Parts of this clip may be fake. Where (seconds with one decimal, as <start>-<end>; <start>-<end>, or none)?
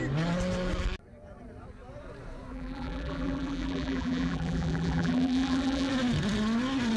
2.5-5.9